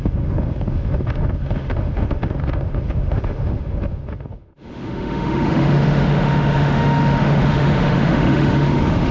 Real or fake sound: fake